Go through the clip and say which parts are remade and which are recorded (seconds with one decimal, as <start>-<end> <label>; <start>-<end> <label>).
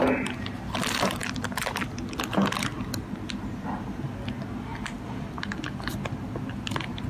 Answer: 0.0-7.1 recorded